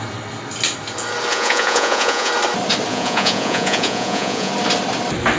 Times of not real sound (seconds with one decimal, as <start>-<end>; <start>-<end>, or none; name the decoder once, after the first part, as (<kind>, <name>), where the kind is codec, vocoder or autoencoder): 1.3-2.3 (vocoder, Vocos); 2.9-4.5